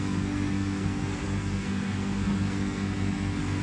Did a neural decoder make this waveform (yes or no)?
yes